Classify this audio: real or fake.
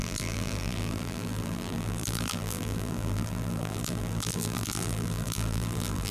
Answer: fake